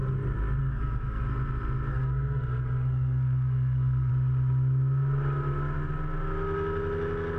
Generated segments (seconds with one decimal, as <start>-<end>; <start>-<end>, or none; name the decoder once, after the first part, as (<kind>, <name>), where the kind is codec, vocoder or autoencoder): 0.6-1.3 (codec, SNAC); 1.9-4.1